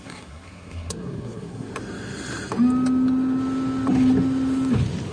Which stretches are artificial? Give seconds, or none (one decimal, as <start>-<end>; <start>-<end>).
0.0-1.7